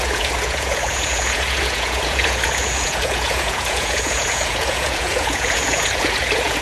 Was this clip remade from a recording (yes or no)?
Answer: yes